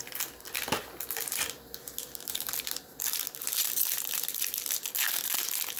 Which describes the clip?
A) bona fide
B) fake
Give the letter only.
A